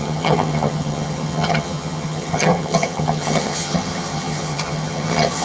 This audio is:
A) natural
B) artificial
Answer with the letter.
B